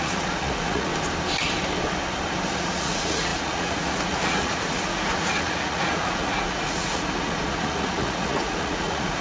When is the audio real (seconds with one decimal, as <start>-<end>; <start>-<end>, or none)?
0.9-2.5